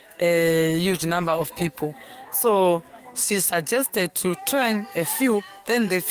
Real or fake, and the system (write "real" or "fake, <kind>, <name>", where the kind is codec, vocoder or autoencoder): fake, codec, SNAC